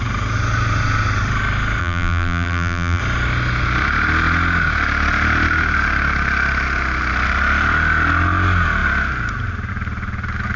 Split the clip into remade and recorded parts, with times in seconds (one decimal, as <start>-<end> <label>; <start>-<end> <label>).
0.0-1.8 recorded; 1.8-3.0 remade; 3.0-10.6 recorded